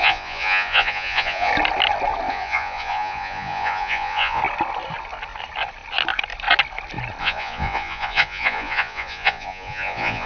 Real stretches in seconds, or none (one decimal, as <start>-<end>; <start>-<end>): 1.5-2.3; 4.4-7.2